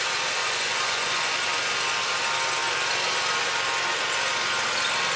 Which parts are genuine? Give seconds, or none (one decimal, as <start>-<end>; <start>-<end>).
0.0-0.4; 1.3-5.2